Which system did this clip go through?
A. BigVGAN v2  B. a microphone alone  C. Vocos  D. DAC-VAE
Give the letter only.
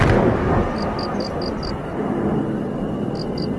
B